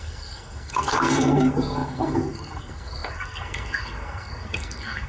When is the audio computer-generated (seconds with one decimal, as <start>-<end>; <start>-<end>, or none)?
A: 0.0-5.1